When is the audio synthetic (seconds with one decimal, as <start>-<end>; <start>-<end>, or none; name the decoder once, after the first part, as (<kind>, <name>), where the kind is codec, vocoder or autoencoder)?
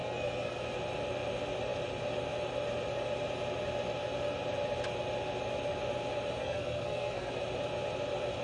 0.0-0.6 (codec, SNAC); 6.4-7.3